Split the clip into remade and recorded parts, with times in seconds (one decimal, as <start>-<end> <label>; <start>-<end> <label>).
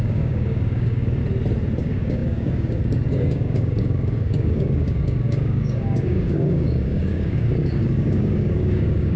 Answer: 0.0-1.2 remade; 1.2-1.8 recorded; 1.8-9.2 remade